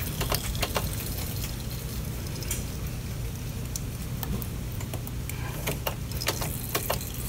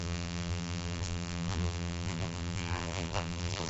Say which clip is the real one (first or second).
first